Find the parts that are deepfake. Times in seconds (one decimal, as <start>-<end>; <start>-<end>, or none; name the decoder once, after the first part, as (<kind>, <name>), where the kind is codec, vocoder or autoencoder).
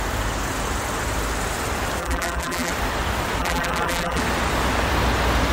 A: 2.0-2.7 (vocoder, BigVGAN v2); 3.4-4.2